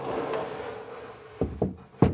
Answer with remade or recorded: recorded